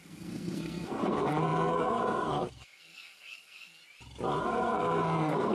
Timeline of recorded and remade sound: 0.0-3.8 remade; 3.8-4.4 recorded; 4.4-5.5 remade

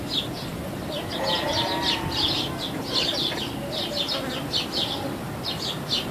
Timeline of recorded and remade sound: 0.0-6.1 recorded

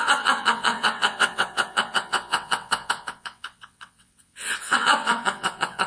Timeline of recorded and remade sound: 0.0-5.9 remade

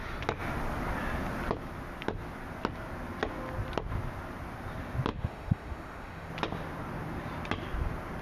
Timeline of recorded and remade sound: 0.0-5.1 recorded; 5.1-6.3 remade; 6.3-8.2 recorded

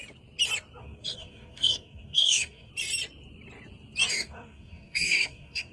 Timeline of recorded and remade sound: 0.0-0.8 recorded; 0.8-2.7 remade; 2.7-4.1 recorded; 4.1-5.7 remade